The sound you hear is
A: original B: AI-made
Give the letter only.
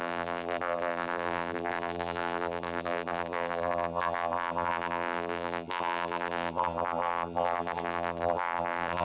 B